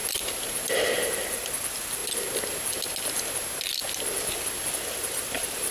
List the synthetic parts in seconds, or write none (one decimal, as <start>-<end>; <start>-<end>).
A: 0.7-2.0; 4.7-5.7